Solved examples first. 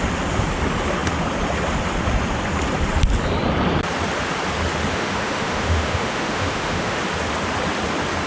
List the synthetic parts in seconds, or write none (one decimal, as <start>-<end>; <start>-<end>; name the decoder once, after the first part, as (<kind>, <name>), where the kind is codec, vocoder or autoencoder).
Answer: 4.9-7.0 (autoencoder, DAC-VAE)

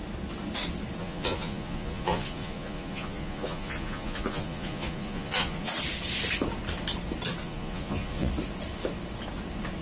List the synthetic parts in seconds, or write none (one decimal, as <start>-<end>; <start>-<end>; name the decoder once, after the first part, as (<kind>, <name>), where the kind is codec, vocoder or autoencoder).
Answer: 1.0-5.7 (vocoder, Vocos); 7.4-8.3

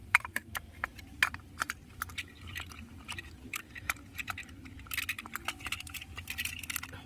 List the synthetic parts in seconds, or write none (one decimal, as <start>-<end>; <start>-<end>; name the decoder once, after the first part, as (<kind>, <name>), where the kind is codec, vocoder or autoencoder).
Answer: 0.0-4.3 (vocoder, BigVGAN v2)